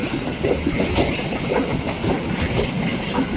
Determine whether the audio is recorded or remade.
recorded